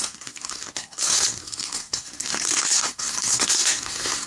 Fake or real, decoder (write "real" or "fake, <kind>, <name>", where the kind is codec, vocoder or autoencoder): fake, codec, SNAC